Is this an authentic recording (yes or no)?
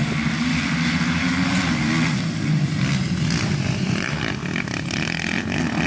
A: yes